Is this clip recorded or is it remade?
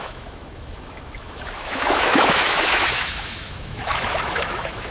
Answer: remade